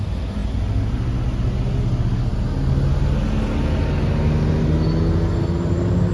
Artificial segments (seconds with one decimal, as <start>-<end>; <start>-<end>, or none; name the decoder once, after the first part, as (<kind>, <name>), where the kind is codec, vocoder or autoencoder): none

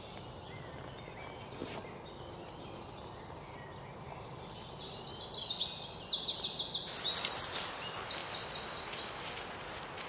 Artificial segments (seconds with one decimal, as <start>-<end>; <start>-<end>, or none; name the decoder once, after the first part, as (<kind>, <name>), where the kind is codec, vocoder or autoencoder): none

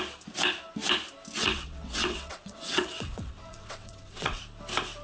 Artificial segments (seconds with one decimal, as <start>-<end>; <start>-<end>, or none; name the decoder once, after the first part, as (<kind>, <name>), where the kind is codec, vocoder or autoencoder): 1.4-4.4 (vocoder, WaveNeXt)